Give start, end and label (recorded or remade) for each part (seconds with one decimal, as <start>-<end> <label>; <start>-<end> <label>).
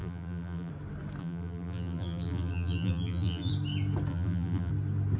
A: 0.0-0.7 remade; 0.7-1.2 recorded; 1.2-3.5 remade; 3.5-4.1 recorded; 4.1-4.7 remade; 4.7-5.2 recorded